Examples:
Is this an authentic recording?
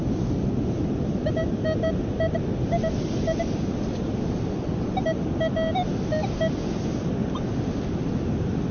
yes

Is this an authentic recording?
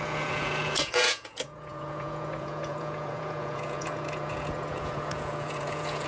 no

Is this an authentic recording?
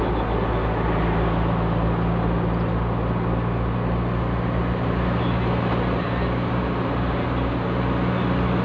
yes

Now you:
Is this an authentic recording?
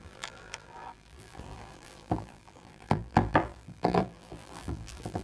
no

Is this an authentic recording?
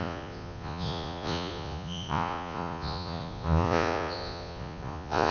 no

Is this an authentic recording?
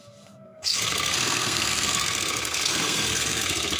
no